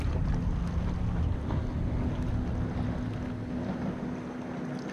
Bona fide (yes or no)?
yes